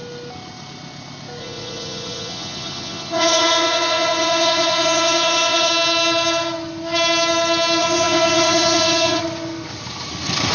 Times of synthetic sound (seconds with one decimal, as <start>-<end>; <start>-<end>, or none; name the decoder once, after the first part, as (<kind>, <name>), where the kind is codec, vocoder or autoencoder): 1.4-5.7 (vocoder, Vocos); 7.8-9.2